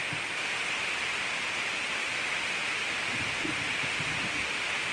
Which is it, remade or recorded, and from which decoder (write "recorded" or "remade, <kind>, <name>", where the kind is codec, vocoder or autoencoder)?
recorded